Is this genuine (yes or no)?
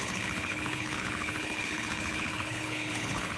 no